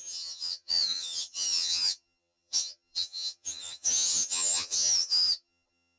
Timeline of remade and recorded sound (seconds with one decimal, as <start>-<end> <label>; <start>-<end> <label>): 0.0-6.0 remade